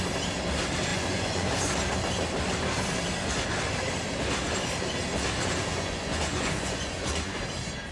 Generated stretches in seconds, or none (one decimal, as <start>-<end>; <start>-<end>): 0.9-1.6; 5.7-7.4